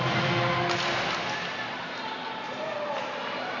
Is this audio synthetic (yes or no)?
no